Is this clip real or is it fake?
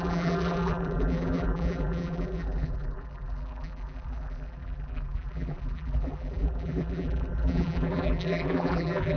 fake